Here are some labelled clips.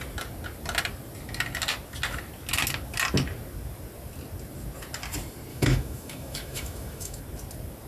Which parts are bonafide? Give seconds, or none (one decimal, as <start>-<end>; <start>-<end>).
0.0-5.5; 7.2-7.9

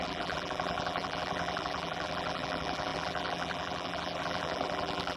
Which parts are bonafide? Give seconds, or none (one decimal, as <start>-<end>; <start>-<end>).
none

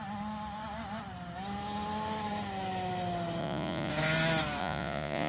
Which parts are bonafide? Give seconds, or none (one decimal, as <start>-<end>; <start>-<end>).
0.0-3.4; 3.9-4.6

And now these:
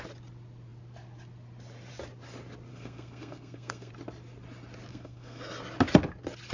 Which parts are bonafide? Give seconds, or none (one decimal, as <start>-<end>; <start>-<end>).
0.0-2.7; 3.9-4.9; 5.4-6.5

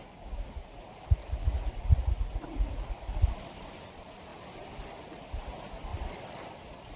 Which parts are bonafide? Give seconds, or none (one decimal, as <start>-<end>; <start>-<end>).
0.0-0.6; 3.1-7.0

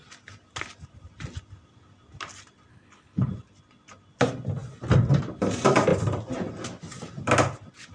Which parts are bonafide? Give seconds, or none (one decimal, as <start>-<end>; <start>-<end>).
0.0-2.7; 3.3-7.9

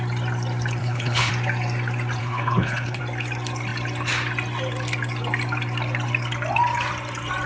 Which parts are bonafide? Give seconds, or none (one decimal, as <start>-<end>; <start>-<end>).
0.0-0.8; 1.3-2.2; 3.0-7.5

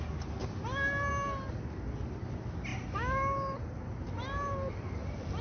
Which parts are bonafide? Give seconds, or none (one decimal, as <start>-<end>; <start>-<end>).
0.0-5.4